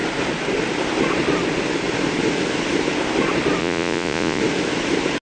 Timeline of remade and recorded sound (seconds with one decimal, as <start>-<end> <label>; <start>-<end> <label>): 0.0-3.6 recorded; 3.6-4.4 remade; 4.4-5.2 recorded